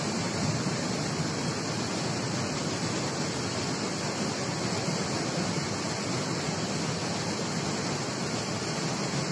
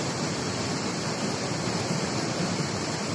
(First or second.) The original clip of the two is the first